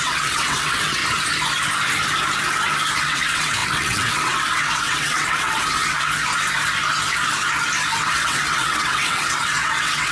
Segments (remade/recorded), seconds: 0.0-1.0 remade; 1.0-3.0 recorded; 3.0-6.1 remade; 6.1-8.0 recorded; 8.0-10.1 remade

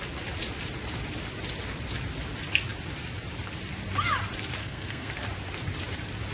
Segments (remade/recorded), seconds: 0.0-4.6 recorded; 4.6-5.1 remade; 5.1-6.3 recorded

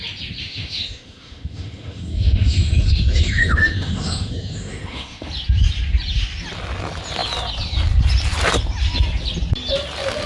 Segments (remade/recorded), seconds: 0.0-0.4 recorded; 0.4-5.3 remade; 5.3-10.3 recorded

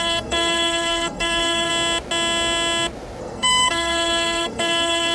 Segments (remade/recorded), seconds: 0.0-1.7 remade; 1.7-3.2 recorded; 3.2-5.1 remade

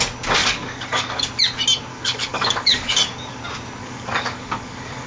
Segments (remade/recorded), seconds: 0.0-0.4 recorded; 0.4-1.2 remade; 1.2-1.9 recorded; 1.9-3.4 remade; 3.4-3.8 recorded; 3.8-5.1 remade

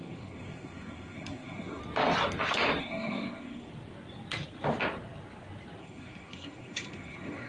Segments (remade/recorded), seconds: 0.0-1.8 remade; 1.8-2.8 recorded; 2.8-3.7 remade; 3.7-5.8 recorded; 5.8-7.5 remade

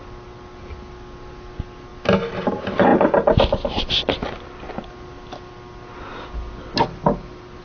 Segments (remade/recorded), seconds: 0.0-7.6 recorded

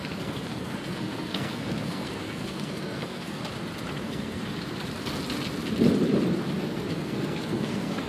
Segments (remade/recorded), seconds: 0.0-3.4 remade; 3.4-4.0 recorded; 4.0-4.4 remade; 4.4-6.6 recorded; 6.6-8.1 remade